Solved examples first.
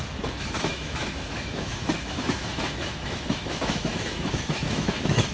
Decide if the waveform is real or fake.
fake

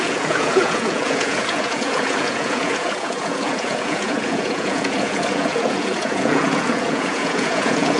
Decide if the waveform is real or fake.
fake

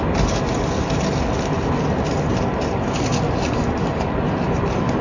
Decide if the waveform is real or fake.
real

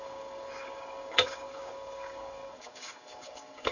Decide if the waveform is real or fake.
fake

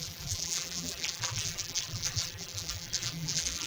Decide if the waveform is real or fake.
fake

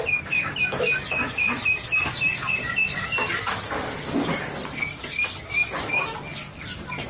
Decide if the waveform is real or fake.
fake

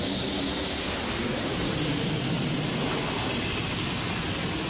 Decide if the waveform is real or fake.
real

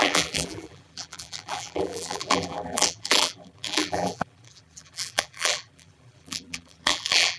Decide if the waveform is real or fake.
fake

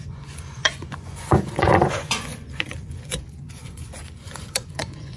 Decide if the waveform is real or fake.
fake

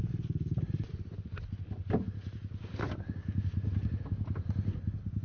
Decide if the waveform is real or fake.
real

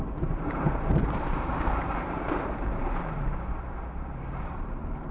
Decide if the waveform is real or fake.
fake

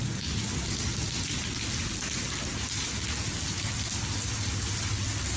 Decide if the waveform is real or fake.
real